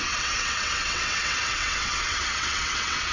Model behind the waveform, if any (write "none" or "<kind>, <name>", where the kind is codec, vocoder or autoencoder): vocoder, WaveNeXt